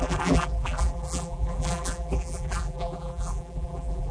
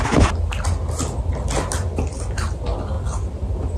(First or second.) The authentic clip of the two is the second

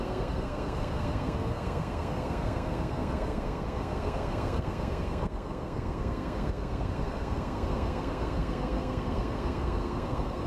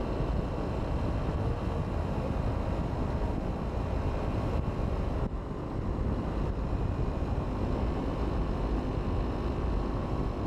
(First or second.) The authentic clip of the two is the second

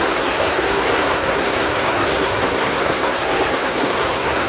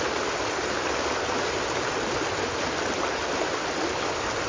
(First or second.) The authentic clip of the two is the second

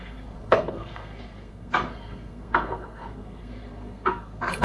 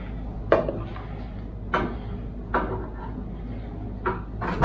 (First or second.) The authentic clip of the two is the second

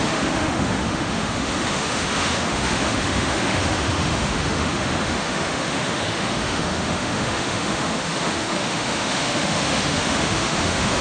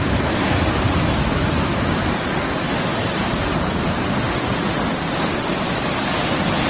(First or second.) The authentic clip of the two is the second